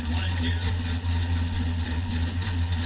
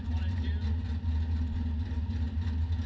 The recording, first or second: second